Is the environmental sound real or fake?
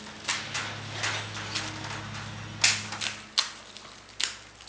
real